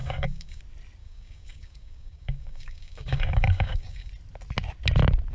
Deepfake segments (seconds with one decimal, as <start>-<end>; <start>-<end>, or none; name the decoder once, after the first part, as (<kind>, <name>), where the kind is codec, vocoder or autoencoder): 0.0-0.6 (codec, DAC); 1.0-4.1